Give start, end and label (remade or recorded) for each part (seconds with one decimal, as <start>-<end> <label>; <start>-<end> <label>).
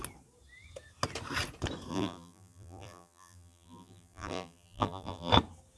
0.0-1.9 recorded; 1.9-5.3 remade; 5.3-5.8 recorded